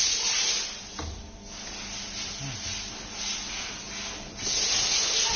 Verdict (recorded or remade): recorded